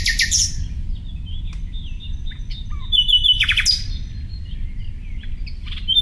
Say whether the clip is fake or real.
real